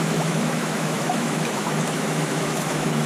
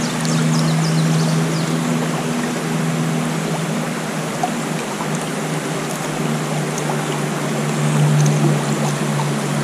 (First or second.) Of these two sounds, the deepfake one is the first